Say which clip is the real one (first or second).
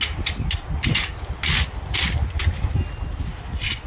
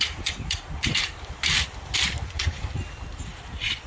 first